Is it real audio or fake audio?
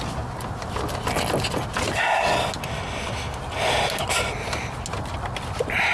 real